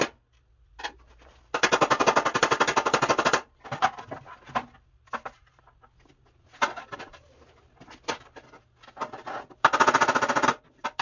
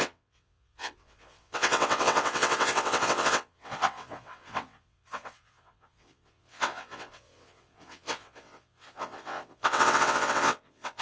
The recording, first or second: first